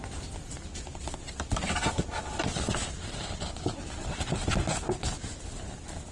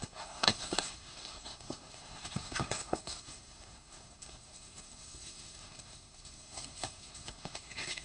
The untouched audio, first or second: first